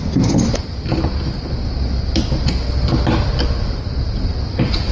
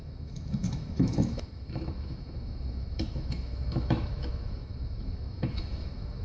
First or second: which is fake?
second